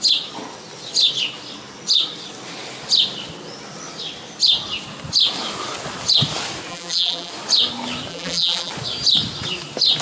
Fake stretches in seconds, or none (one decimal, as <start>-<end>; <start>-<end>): 6.7-7.3; 8.1-8.7